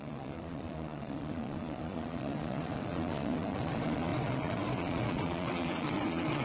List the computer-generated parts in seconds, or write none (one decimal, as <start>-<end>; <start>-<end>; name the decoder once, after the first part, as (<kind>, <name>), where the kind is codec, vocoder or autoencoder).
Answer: 0.0-6.4 (vocoder, Vocos)